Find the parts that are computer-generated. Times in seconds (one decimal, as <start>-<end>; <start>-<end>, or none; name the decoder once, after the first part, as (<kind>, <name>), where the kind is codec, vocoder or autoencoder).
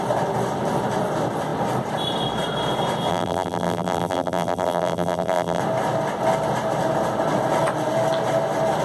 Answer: 3.1-5.6 (vocoder, BigVGAN v2)